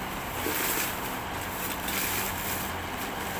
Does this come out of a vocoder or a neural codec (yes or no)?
yes